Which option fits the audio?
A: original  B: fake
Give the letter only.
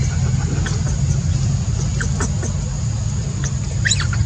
A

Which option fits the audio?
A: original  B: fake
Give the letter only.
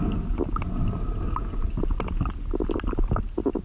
A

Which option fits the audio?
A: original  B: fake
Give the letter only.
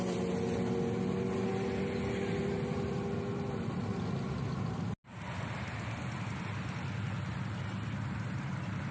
A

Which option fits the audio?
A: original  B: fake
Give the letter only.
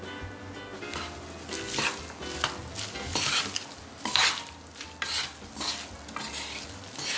A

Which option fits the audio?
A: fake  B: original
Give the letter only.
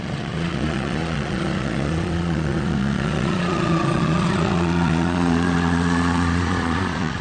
A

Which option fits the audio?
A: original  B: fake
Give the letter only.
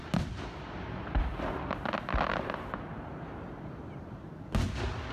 A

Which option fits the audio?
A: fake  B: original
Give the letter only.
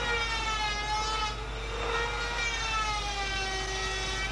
B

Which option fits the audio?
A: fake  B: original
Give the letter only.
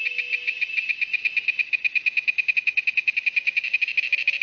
B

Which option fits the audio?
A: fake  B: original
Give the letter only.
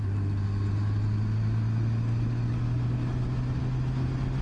B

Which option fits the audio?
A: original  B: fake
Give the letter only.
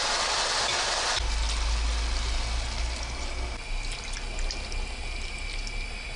A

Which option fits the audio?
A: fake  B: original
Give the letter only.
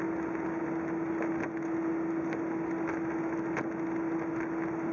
B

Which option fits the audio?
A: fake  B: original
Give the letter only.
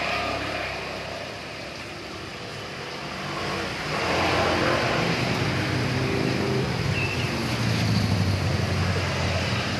B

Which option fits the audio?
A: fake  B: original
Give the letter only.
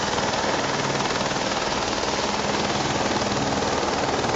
B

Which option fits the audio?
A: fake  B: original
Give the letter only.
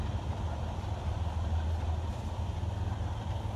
B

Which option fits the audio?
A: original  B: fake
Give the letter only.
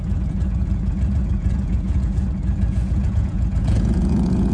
B